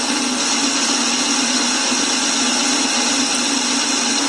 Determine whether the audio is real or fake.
real